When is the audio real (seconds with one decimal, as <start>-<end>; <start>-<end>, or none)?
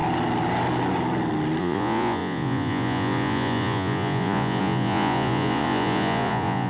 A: 0.0-1.6